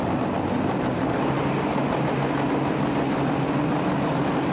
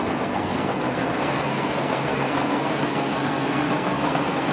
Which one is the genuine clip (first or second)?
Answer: first